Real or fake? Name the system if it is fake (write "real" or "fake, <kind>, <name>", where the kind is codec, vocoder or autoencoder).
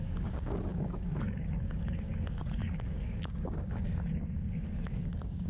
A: fake, codec, DAC